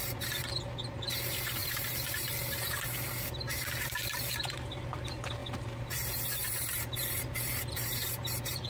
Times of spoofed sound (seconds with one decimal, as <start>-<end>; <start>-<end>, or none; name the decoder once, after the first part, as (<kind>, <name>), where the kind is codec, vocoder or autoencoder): 0.9-6.4 (vocoder, BigVGAN v2); 7.7-8.7